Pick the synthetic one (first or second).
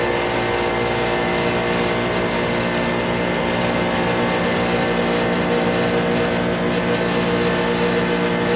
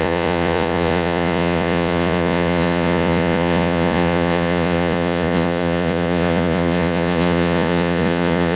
second